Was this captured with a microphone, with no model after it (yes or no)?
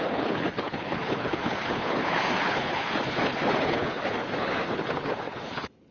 no